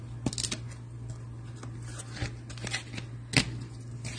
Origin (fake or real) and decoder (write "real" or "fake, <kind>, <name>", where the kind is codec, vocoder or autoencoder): real